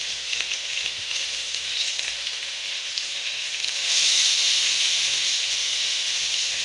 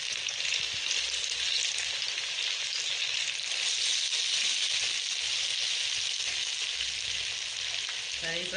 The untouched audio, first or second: second